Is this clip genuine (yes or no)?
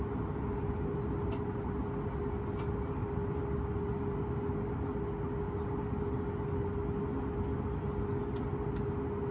yes